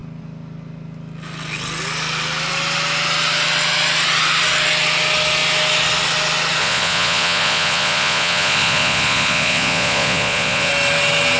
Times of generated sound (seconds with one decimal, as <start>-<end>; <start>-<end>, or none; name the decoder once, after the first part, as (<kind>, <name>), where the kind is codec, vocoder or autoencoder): 6.6-10.7 (vocoder, Vocos)